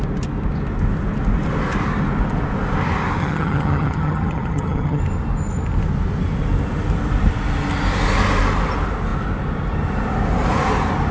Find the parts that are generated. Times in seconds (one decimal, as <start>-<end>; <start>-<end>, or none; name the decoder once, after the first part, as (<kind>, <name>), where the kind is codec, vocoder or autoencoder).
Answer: 3.2-5.0 (vocoder, HiFi-GAN)